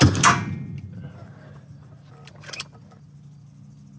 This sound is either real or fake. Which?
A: real